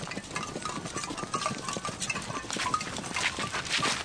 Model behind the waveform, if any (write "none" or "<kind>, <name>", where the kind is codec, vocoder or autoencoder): none